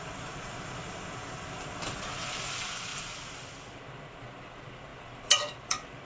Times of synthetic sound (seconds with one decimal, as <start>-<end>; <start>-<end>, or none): 2.9-3.9; 4.9-6.1